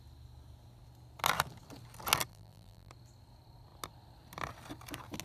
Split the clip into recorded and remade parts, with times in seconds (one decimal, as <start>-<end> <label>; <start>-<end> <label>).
0.0-2.3 recorded; 2.3-2.9 remade; 2.9-5.2 recorded